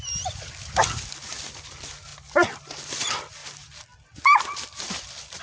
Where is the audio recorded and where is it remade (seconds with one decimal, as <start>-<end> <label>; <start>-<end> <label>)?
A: 0.0-5.4 remade

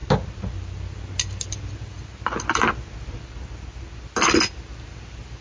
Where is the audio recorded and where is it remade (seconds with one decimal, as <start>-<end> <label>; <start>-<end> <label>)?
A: 0.0-5.4 recorded